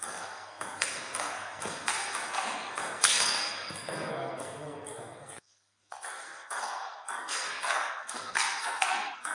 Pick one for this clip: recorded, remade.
remade